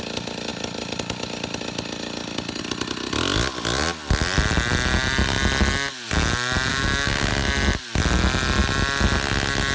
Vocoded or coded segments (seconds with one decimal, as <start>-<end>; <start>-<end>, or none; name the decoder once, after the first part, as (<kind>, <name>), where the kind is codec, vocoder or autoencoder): 6.7-7.3 (codec, DAC)